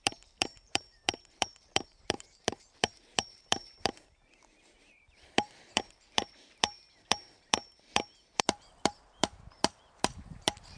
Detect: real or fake fake